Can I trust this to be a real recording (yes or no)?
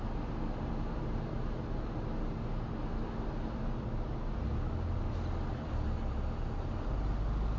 yes